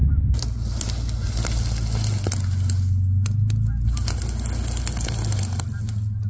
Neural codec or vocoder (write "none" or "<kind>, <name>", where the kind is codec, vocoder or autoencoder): none